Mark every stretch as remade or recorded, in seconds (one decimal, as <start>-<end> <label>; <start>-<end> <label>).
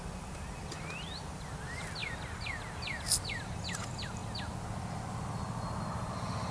0.0-6.5 recorded